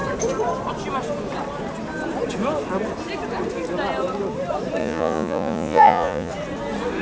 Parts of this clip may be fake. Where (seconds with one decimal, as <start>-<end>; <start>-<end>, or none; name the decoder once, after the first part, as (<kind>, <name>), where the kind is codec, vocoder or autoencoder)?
4.8-6.3 (vocoder, Vocos)